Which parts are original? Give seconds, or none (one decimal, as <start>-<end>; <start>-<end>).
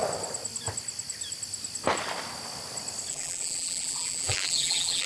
0.0-3.1